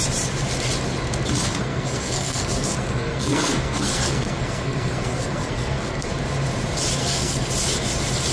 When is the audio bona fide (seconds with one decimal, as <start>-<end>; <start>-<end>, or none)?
0.0-1.4; 6.1-7.0; 7.5-8.3